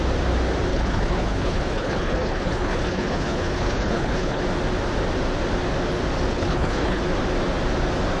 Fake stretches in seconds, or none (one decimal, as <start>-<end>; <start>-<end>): 0.7-4.4; 6.3-7.0